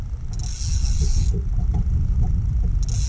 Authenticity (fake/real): real